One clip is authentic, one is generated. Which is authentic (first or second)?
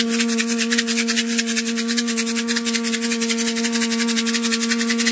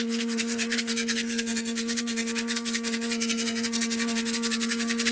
first